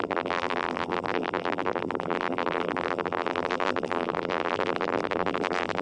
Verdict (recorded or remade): remade